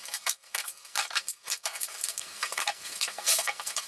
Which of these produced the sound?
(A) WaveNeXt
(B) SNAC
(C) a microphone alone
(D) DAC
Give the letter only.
B